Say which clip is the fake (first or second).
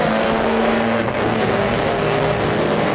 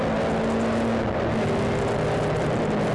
first